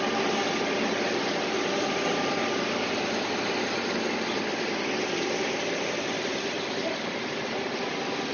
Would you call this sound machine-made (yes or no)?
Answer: no